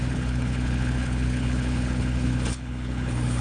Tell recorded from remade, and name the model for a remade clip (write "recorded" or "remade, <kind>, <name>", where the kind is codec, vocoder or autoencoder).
remade, codec, HILCodec